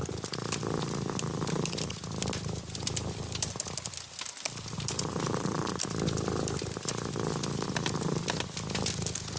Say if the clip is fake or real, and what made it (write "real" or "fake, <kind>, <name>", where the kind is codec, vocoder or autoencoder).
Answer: real